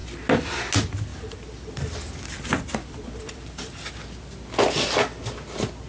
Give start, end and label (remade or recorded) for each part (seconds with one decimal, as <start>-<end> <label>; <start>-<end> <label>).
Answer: 0.0-1.1 recorded; 1.1-3.9 remade; 3.9-5.9 recorded